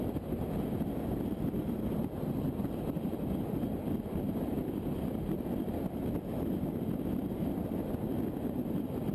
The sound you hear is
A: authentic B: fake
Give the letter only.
A